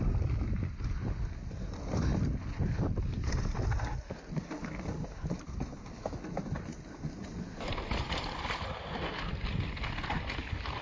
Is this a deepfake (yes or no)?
no